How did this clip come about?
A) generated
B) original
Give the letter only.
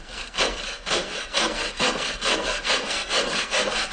A